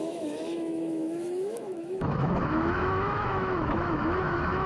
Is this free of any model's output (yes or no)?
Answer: no